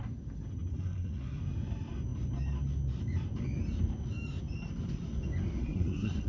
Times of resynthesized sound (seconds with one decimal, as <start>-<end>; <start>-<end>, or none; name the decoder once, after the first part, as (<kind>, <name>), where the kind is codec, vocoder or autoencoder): 0.7-1.4 (codec, SNAC); 5.6-6.3